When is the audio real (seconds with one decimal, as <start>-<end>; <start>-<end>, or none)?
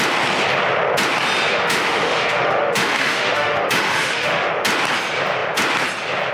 0.0-1.5; 4.5-6.3